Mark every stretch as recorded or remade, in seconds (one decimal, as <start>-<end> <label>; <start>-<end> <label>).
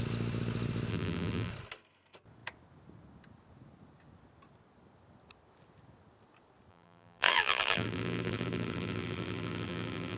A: 0.0-0.9 recorded; 0.9-1.5 remade; 1.5-6.7 recorded; 6.7-10.2 remade